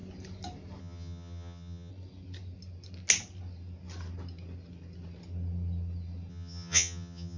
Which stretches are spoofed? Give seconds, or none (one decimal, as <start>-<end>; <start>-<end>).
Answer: 0.8-1.9; 6.3-7.4